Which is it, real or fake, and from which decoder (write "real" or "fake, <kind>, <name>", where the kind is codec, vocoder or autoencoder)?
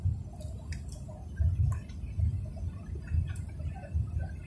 real